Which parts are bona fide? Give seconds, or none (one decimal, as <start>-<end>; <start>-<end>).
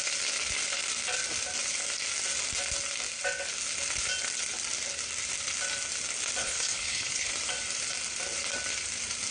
0.0-6.4; 7.3-9.3